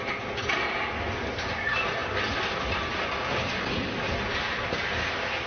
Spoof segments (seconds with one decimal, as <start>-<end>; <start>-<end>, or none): none